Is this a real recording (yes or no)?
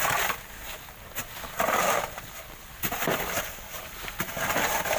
yes